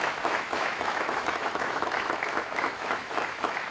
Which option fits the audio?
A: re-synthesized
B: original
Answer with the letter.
A